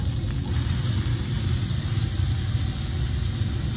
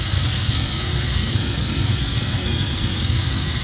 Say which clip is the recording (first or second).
first